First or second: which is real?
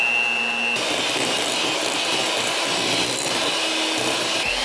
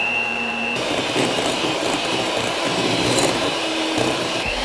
first